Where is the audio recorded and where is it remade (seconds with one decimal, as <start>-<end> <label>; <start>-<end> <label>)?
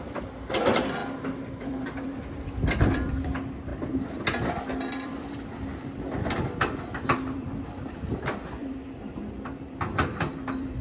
0.0-1.0 remade; 1.0-1.6 recorded; 1.6-10.8 remade